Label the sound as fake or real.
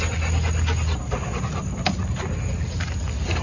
real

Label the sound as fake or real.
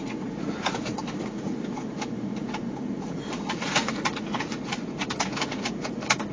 fake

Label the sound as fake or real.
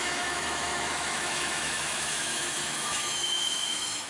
fake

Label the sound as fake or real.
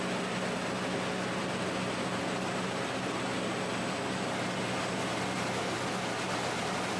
real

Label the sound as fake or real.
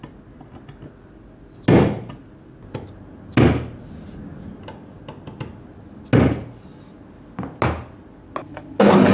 real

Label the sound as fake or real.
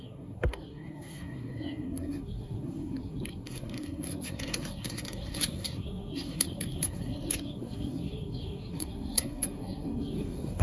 fake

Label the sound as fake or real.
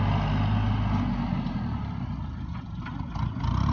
real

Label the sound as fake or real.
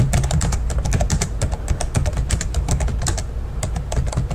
real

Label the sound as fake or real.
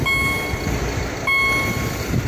real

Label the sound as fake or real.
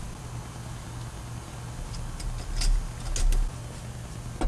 real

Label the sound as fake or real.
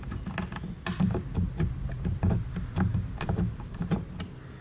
real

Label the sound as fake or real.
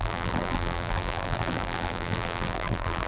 fake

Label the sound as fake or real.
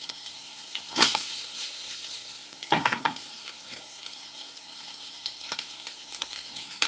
fake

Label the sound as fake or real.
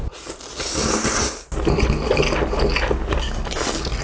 real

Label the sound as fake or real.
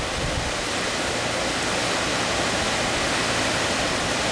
real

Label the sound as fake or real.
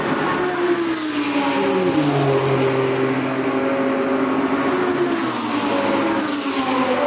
real